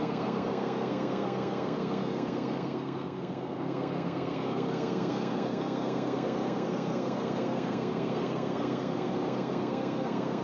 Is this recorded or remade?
remade